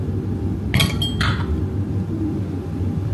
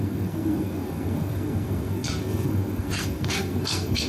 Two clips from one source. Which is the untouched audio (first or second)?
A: first